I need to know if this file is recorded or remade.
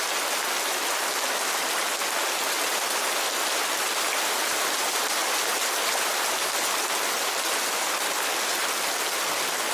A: recorded